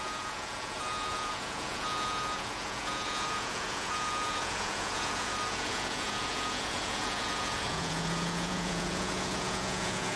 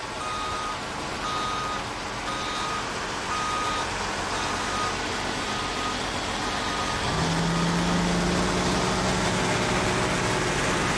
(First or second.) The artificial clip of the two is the first